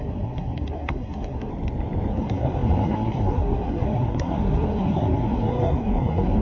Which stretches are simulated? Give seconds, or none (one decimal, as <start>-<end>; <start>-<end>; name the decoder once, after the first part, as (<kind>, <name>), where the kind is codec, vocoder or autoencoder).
0.0-1.5 (codec, SNAC); 2.1-6.4